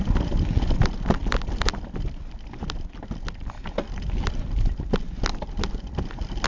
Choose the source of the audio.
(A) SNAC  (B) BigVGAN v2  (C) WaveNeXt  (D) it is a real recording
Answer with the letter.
D